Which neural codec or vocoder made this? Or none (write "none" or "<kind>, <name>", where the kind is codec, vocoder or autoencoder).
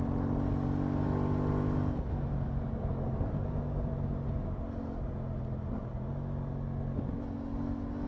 none